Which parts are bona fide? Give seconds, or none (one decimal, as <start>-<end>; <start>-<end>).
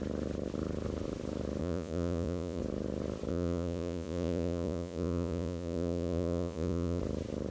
0.0-1.6; 2.6-3.3; 7.0-7.5